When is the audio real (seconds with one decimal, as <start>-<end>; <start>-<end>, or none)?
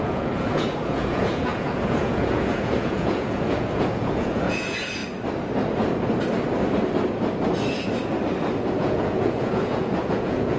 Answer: 5.0-8.7